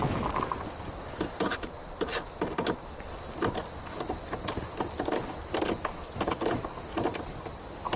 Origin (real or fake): real